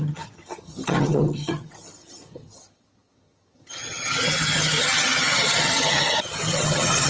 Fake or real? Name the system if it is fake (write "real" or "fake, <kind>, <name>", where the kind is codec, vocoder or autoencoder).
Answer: fake, vocoder, HiFi-GAN